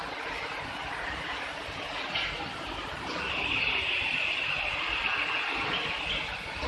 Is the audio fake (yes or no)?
no